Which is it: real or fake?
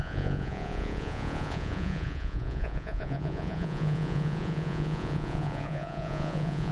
fake